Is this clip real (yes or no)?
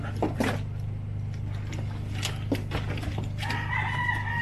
yes